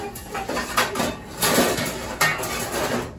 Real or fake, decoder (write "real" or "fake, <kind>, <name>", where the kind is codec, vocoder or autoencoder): fake, vocoder, BigVGAN v2